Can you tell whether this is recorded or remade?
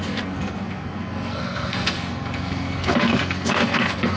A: remade